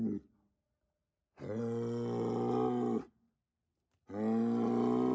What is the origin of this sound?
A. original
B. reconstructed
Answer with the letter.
A